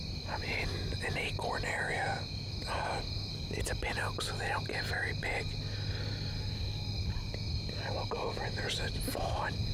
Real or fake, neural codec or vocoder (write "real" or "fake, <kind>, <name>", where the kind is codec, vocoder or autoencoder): real